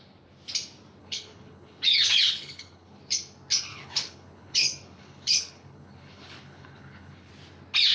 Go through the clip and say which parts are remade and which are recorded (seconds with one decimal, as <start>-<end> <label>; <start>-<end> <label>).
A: 0.0-1.0 recorded; 1.0-3.0 remade; 3.0-3.7 recorded; 3.7-7.3 remade; 7.3-7.9 recorded